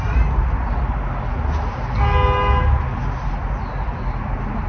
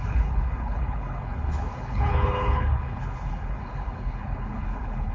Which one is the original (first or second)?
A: first